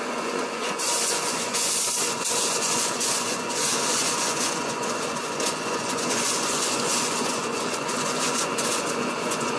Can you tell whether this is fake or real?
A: fake